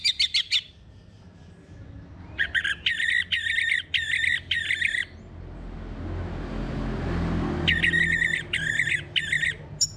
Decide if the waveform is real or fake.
real